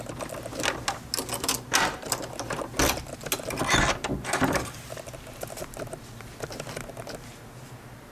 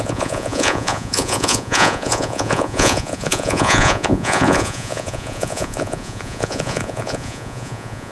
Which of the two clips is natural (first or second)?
first